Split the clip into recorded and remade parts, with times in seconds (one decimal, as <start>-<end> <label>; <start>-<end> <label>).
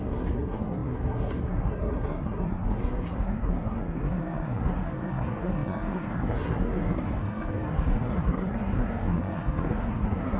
0.0-10.4 remade